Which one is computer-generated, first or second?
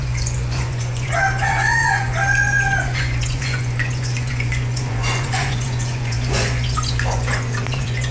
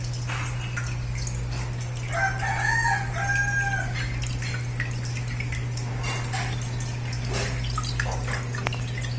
first